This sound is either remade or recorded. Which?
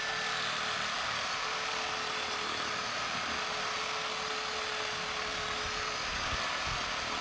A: recorded